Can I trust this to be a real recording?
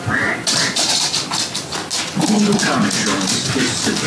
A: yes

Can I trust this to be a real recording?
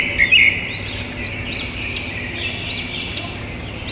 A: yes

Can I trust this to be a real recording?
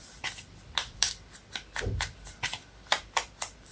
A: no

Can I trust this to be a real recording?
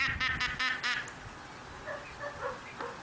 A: yes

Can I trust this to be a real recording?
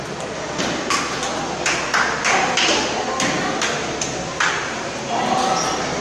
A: yes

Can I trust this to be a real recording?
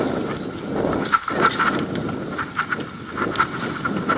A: yes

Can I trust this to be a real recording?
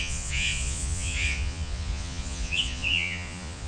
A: no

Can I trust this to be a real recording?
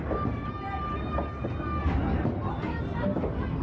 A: yes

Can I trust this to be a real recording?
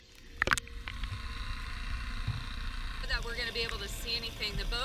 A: yes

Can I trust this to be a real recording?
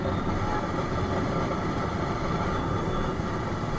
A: yes